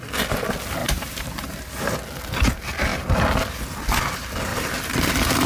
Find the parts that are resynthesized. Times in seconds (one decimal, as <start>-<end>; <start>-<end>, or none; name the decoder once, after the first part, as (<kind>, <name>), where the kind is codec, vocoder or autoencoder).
0.8-2.0 (vocoder, BigVGAN v2)